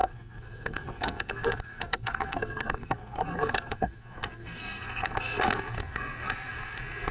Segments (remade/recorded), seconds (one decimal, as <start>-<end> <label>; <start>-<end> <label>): 0.0-7.1 remade